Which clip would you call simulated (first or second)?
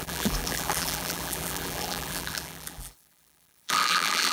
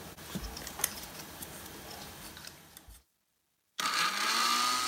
first